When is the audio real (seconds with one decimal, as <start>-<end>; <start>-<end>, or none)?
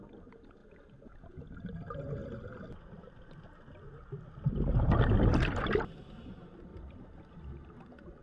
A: 0.0-2.2; 3.3-6.7; 7.3-8.2